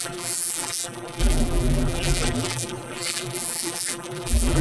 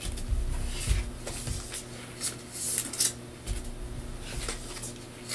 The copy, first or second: first